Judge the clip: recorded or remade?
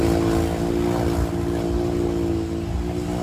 recorded